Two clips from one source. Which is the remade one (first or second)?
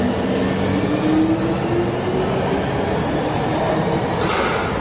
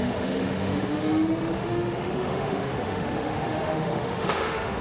second